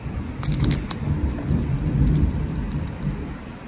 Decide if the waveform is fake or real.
fake